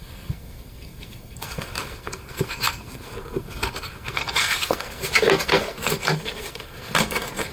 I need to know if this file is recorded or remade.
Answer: remade